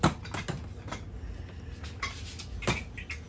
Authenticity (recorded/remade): recorded